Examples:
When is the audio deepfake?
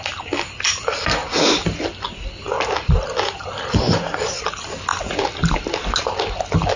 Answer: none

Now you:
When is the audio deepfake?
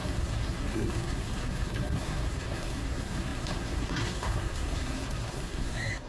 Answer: 0.0-6.1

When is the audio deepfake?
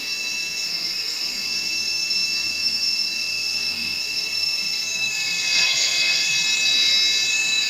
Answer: 0.0-6.3; 7.3-7.7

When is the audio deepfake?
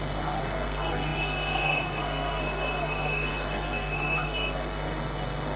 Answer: 0.0-5.6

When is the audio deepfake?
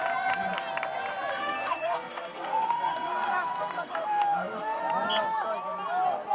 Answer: 1.3-4.8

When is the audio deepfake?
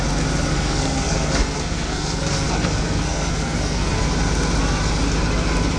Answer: 0.5-4.0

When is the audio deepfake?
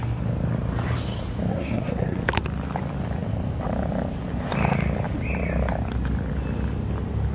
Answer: 1.5-2.2